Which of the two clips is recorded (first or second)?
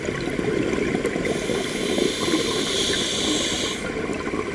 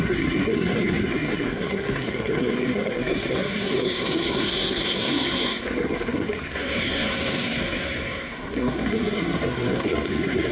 first